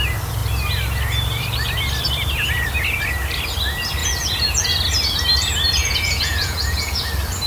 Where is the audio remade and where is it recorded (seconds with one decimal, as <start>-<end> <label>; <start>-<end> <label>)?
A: 0.0-4.0 recorded; 4.0-4.7 remade; 4.7-5.8 recorded; 5.8-7.1 remade; 7.1-7.5 recorded